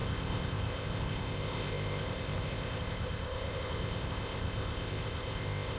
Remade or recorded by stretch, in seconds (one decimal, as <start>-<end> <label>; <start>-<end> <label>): 0.0-5.8 remade